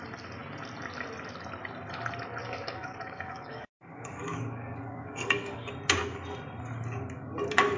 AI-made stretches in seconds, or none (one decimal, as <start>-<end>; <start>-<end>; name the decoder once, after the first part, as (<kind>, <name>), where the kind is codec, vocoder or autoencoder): 2.4-5.7 (codec, DAC)